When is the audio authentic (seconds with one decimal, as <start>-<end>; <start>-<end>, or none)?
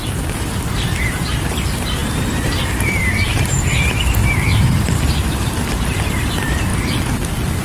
6.7-7.6